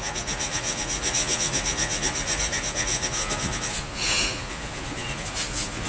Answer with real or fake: fake